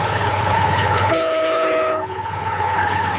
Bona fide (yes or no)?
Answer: no